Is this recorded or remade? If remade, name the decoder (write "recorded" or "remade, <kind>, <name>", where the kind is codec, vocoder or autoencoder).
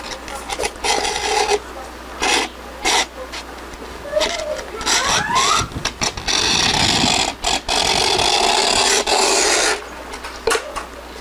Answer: recorded